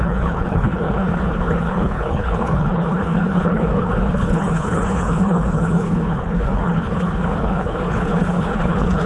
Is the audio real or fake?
fake